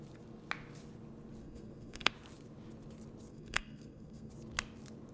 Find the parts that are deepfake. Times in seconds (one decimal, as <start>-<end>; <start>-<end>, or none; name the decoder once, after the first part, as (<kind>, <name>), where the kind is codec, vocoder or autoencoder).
1.4-2.1 (codec, SNAC); 3.3-4.3